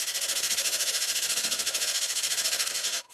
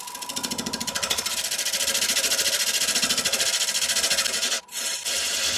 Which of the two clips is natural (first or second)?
second